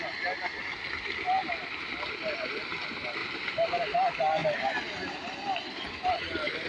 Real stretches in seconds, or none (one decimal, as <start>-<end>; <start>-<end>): 0.0-6.7